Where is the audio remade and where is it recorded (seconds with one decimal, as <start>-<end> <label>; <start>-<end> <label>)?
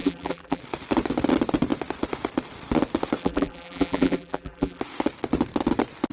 0.0-0.6 remade; 0.6-3.2 recorded; 3.2-4.8 remade; 4.8-6.1 recorded